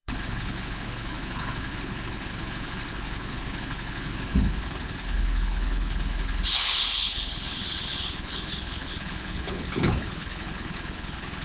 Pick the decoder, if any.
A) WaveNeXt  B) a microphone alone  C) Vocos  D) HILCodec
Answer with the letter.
D